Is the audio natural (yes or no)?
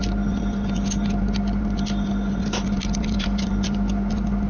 yes